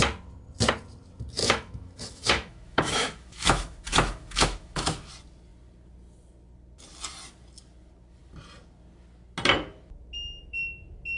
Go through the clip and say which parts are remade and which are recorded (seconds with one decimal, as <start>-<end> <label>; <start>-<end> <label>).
0.0-1.4 recorded; 1.4-5.1 remade; 5.1-11.2 recorded